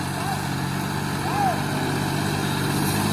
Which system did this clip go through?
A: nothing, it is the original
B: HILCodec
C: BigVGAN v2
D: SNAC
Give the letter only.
A